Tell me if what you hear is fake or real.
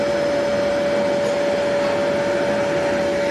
real